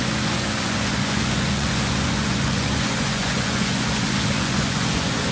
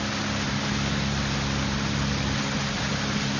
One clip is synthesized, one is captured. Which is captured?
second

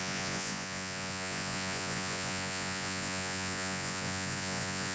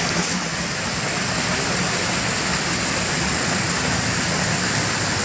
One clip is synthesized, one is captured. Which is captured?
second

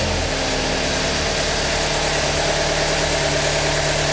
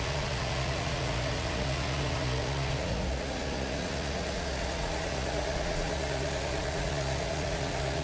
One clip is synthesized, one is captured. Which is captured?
first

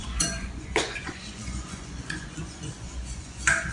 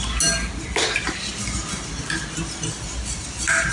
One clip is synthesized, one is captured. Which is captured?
second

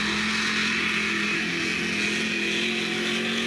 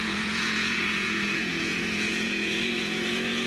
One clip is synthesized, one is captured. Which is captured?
first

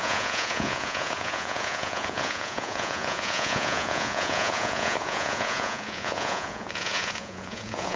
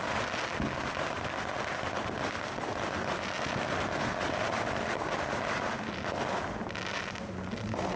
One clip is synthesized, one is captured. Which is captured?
second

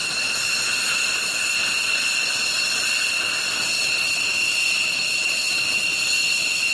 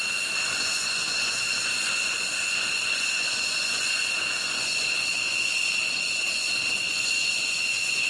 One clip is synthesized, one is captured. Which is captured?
first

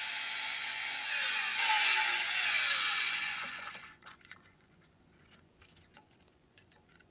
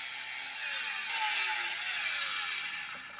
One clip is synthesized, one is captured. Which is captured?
second